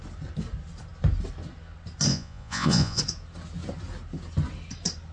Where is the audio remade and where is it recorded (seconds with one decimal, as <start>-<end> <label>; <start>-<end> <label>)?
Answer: 0.0-2.1 recorded; 2.1-3.0 remade; 3.0-5.1 recorded